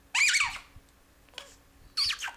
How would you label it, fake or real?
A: real